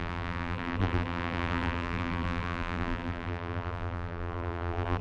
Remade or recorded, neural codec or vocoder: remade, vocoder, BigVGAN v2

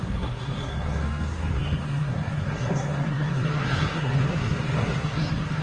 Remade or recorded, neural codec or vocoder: remade, codec, SNAC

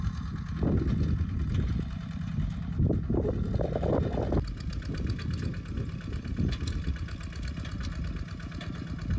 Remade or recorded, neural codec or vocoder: recorded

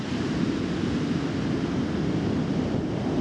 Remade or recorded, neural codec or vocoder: recorded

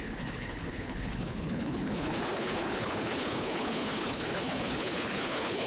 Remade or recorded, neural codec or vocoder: remade, codec, HILCodec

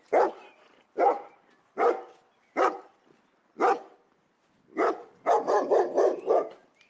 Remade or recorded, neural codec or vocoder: recorded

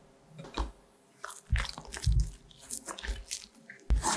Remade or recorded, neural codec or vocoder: recorded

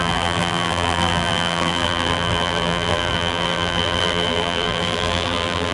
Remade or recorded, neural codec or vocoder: remade, vocoder, BigVGAN v2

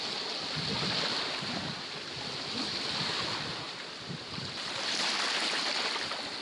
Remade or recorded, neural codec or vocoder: recorded